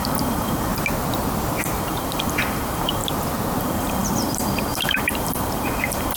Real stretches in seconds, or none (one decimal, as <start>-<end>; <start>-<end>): 0.7-1.8; 3.0-3.6